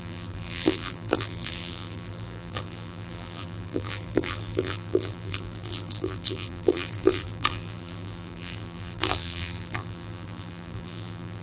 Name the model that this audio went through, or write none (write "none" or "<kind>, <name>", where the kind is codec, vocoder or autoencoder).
vocoder, BigVGAN v2